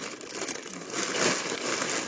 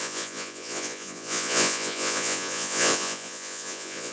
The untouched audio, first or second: first